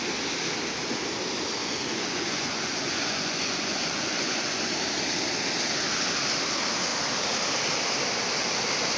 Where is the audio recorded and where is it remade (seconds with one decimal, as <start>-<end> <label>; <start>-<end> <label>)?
0.0-1.6 recorded; 1.6-4.7 remade; 4.7-9.0 recorded